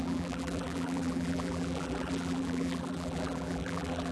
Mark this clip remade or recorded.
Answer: remade